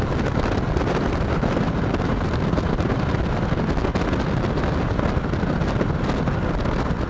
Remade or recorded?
recorded